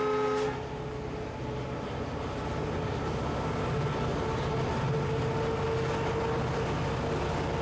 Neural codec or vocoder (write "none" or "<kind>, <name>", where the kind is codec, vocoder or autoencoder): none